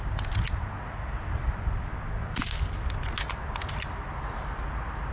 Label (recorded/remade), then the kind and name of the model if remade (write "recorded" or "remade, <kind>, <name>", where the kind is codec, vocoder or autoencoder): recorded